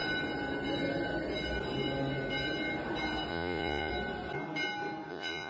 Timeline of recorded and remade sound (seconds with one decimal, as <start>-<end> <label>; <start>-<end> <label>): 0.0-3.3 recorded; 3.3-3.9 remade; 3.9-5.1 recorded; 5.1-5.5 remade